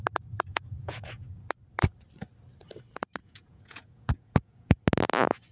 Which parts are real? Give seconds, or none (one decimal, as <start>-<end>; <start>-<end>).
0.0-0.5; 1.3-3.2; 4.8-5.5